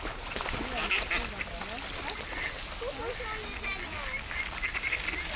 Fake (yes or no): no